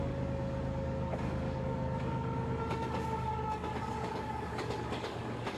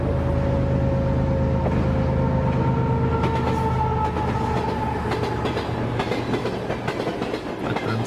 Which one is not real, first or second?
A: first